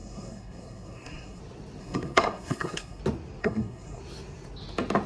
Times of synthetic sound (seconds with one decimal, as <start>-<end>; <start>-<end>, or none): 0.0-1.4; 1.8-3.0; 3.4-4.0